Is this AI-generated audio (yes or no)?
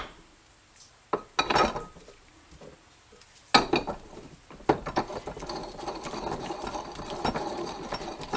no